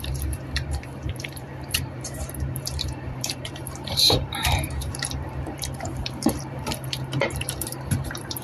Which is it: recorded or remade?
remade